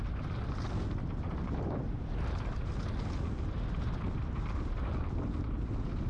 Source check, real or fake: real